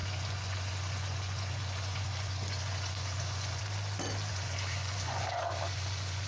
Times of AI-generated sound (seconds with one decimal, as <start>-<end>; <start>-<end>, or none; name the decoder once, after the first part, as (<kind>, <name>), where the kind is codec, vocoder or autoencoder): 0.0-3.6 (vocoder, Vocos); 4.3-6.3